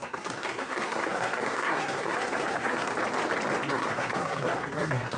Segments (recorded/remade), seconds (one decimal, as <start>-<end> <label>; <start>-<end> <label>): 0.0-2.9 remade; 2.9-3.7 recorded; 3.7-5.2 remade